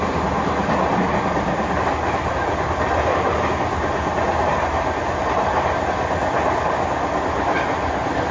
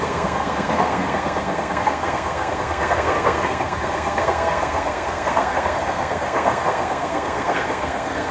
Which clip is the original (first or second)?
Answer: first